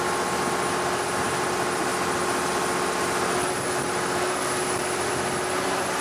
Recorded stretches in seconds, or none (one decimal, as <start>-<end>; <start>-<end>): 0.0-6.0